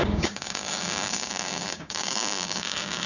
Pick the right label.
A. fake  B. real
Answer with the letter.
A